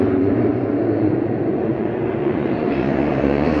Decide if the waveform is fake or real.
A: fake